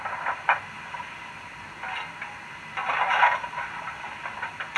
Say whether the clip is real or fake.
real